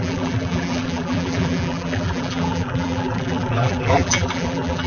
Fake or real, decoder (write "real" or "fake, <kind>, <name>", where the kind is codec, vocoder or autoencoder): fake, vocoder, BigVGAN v2